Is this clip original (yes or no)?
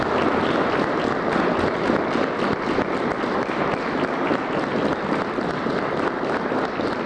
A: yes